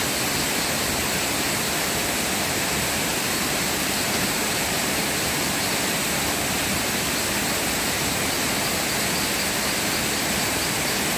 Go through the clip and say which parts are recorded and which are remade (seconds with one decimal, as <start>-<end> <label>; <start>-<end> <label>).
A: 0.0-3.1 recorded; 3.1-5.5 remade; 5.5-11.2 recorded